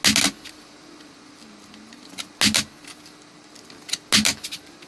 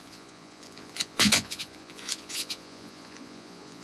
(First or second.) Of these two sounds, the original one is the first